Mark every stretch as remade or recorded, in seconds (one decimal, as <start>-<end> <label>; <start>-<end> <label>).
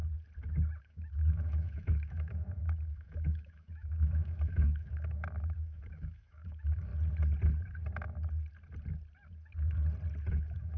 0.0-0.8 recorded; 0.8-6.9 remade; 6.9-10.3 recorded; 10.3-10.8 remade